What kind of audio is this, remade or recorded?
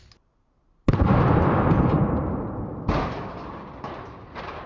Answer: recorded